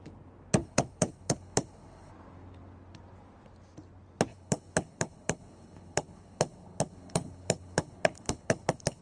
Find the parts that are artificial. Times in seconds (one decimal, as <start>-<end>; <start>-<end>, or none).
0.6-2.1; 4.3-9.0